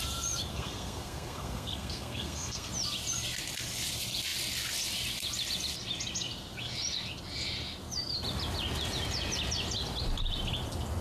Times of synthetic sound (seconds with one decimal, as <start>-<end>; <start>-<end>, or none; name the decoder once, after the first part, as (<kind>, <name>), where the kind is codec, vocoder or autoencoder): 0.5-2.7 (codec, SNAC)